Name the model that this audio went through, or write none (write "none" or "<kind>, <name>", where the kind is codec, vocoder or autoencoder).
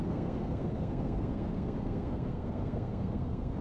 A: codec, SNAC